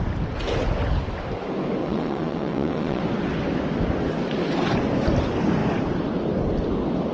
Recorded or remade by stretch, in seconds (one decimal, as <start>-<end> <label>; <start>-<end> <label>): 0.0-1.8 recorded; 1.8-3.0 remade; 3.0-7.1 recorded